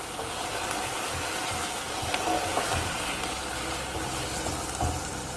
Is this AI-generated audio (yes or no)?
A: no